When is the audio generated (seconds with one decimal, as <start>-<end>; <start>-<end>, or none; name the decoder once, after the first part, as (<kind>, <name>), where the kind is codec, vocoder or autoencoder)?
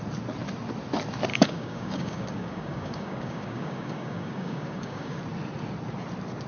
1.3-5.2 (codec, DAC)